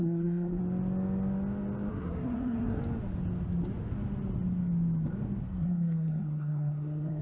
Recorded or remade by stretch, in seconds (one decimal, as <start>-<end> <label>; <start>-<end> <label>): 0.0-0.6 remade; 0.6-1.9 recorded; 1.9-2.8 remade; 2.8-5.4 recorded; 5.4-7.2 remade